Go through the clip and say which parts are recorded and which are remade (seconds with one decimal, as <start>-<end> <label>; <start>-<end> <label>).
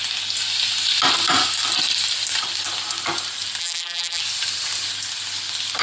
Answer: 0.0-3.6 recorded; 3.6-4.2 remade; 4.2-5.8 recorded